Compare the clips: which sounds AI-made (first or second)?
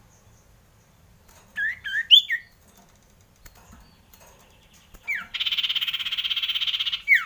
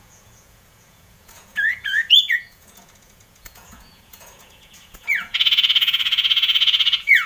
second